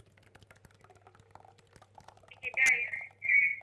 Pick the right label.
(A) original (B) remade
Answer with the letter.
A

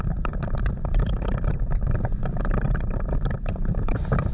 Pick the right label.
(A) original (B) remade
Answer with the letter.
B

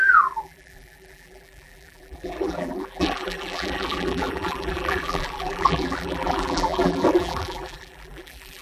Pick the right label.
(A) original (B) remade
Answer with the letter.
B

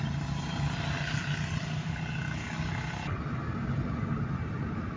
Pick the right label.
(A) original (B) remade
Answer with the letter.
A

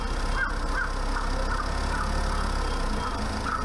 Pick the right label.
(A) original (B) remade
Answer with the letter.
A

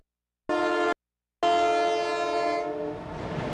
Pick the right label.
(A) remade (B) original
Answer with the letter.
B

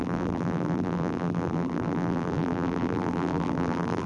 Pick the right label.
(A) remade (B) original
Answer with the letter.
A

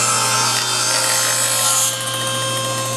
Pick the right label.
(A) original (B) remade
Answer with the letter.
A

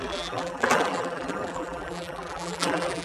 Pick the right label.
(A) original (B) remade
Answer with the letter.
B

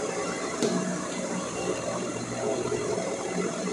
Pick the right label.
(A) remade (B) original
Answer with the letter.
A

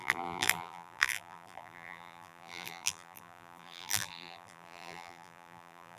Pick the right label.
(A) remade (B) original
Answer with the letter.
A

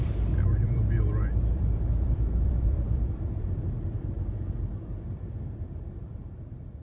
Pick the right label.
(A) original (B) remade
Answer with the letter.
B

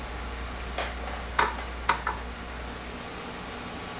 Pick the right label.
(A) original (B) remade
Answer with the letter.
A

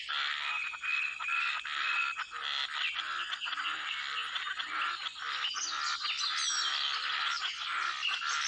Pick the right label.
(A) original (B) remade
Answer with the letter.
A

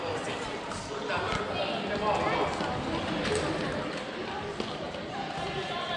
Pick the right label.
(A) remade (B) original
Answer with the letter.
B